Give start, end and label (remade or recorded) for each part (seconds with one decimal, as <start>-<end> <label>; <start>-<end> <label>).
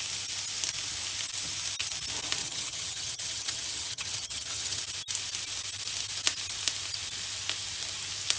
0.0-2.4 recorded; 2.4-4.8 remade; 4.8-8.4 recorded